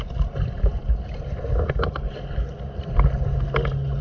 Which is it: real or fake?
real